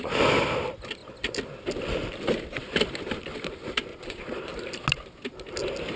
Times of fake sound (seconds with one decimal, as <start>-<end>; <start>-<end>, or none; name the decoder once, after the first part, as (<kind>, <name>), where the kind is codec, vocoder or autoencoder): 3.9-4.4 (vocoder, Vocos)